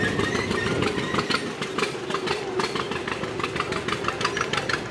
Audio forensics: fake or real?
real